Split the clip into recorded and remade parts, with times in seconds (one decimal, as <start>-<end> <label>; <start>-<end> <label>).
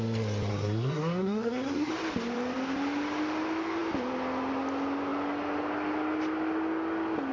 0.0-0.5 recorded; 0.5-1.9 remade; 1.9-7.3 recorded